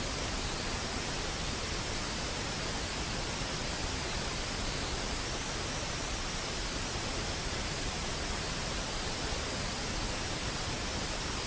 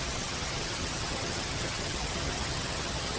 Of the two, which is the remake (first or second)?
second